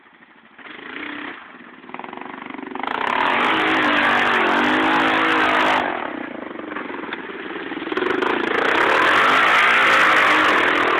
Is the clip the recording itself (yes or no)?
yes